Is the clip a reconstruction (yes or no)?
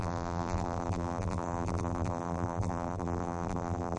yes